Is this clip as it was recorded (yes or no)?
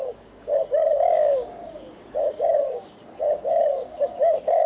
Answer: no